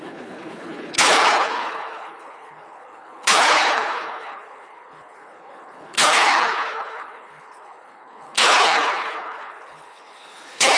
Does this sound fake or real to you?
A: fake